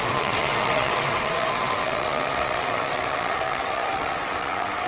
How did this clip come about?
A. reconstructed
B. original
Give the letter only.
A